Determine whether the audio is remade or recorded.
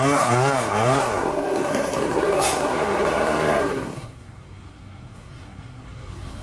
remade